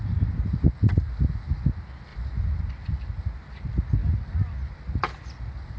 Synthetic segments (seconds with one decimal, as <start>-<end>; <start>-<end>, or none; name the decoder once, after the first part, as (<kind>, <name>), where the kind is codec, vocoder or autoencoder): none